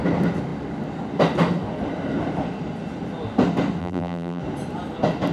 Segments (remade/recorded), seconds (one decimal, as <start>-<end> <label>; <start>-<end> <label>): 0.0-3.8 recorded; 3.8-4.4 remade; 4.4-5.3 recorded